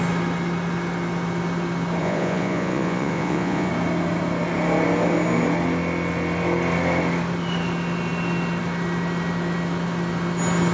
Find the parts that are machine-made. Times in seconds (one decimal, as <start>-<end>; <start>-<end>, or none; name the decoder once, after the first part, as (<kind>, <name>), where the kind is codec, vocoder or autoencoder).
2.0-3.7 (vocoder, Vocos)